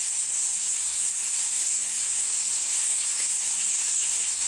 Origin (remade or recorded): remade